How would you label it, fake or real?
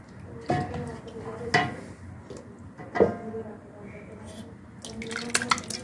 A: real